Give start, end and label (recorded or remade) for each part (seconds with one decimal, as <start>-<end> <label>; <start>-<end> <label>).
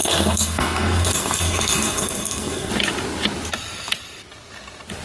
0.0-2.7 remade; 2.7-5.0 recorded